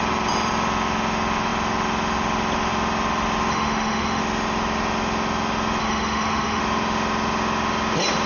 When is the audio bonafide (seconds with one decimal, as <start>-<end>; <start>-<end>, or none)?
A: 0.0-3.5; 4.2-5.8; 6.6-8.3